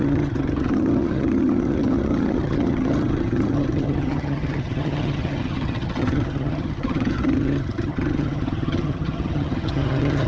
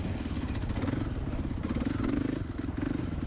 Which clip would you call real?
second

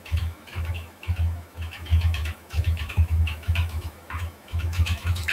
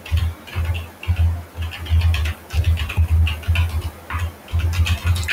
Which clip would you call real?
second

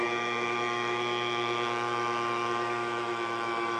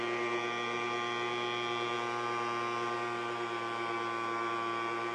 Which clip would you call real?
second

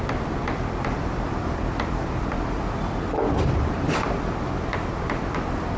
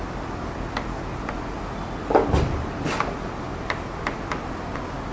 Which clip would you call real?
second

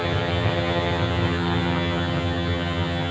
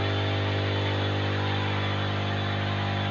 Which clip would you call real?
second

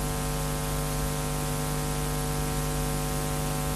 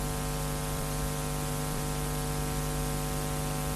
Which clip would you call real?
first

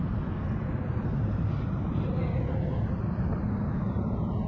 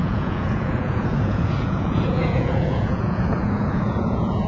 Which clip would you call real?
first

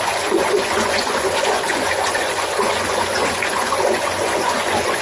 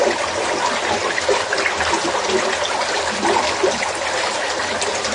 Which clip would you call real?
second